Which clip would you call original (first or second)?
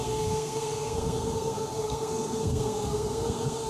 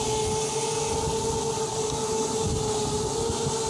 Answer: second